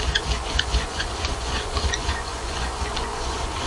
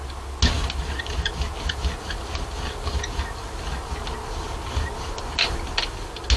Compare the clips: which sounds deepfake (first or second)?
first